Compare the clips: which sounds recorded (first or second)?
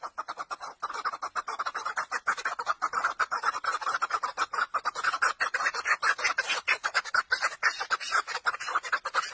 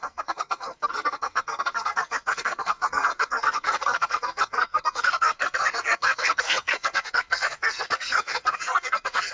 first